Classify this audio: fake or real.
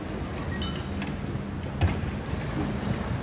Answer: real